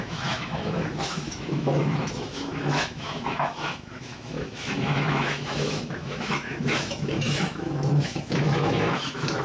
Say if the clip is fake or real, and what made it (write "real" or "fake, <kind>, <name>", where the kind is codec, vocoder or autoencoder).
fake, autoencoder, DAC-VAE